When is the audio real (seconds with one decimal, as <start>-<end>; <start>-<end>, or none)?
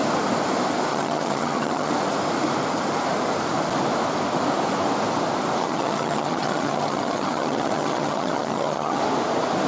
0.0-0.9; 1.9-5.6; 9.0-9.7